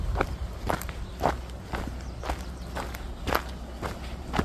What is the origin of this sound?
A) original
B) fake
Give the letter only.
A